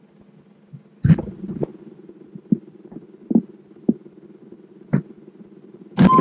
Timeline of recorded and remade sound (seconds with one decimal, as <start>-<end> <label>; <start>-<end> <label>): 0.0-6.2 recorded